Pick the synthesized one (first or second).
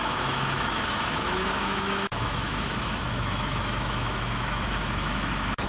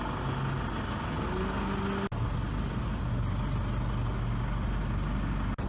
first